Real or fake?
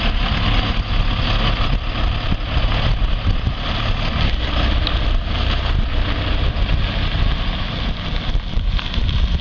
real